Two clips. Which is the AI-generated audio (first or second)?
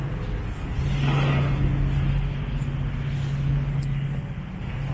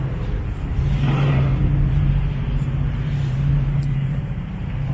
second